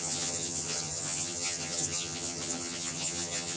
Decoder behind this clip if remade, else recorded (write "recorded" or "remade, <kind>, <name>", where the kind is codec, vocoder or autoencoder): remade, vocoder, HiFi-GAN